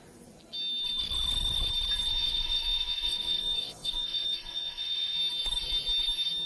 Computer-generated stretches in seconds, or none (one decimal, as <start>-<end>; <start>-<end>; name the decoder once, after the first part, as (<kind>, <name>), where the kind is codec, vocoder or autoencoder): 2.1-5.2 (vocoder, WaveNeXt)